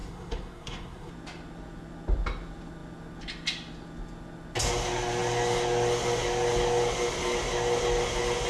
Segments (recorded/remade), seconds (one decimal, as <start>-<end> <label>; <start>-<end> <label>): 0.0-1.1 remade; 1.1-8.5 recorded